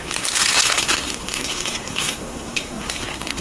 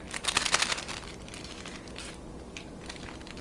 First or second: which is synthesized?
first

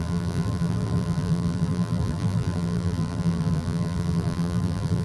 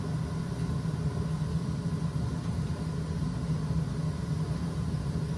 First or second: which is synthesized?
first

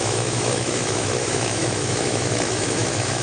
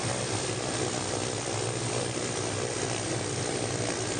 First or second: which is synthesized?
first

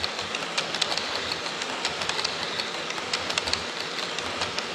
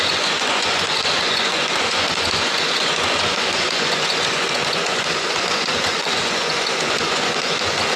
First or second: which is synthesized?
second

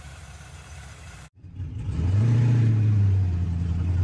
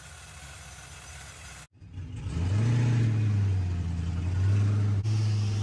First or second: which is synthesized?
first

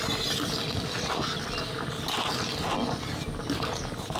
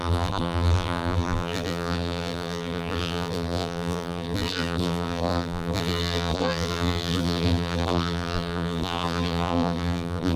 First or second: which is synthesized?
second